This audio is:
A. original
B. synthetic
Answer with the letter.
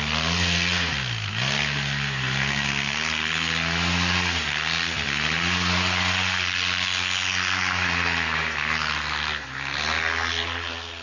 A